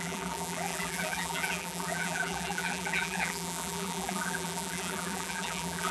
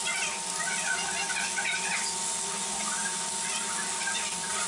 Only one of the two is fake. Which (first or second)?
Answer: first